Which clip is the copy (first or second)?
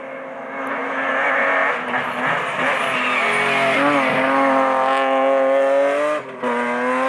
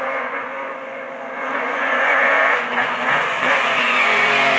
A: second